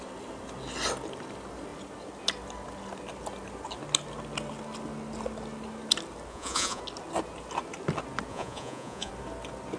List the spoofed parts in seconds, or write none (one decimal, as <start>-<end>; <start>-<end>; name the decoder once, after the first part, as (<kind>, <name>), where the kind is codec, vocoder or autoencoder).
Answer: 6.3-6.8 (vocoder, Vocos); 8.3-9.1